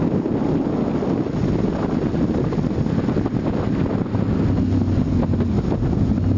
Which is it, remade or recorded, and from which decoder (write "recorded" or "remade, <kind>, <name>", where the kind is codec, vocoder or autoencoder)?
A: recorded